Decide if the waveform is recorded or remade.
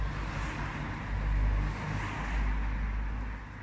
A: recorded